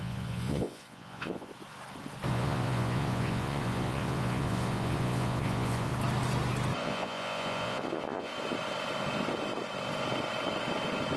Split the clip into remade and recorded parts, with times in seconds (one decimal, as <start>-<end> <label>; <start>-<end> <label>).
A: 0.0-1.5 remade; 1.5-2.3 recorded; 2.3-5.9 remade; 5.9-6.8 recorded; 6.8-8.3 remade; 8.3-11.2 recorded